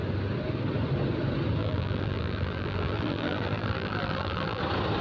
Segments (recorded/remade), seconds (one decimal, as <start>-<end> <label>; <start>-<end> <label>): 0.0-1.6 recorded; 1.6-4.6 remade; 4.6-5.0 recorded